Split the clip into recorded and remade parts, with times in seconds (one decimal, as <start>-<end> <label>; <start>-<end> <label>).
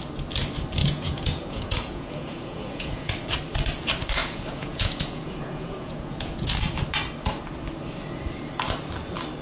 0.0-0.8 recorded; 0.8-3.1 remade; 3.1-4.2 recorded; 4.2-6.5 remade; 6.5-9.4 recorded